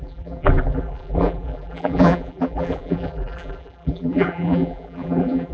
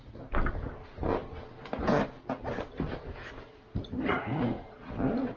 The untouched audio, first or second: second